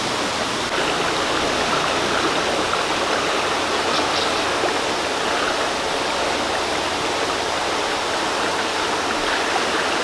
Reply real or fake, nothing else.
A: real